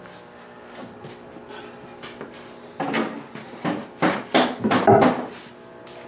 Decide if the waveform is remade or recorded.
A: recorded